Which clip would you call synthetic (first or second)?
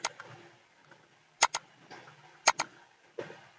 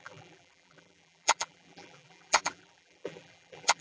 second